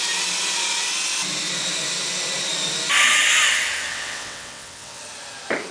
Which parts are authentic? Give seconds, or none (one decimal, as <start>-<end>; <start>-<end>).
0.0-3.9; 5.0-5.7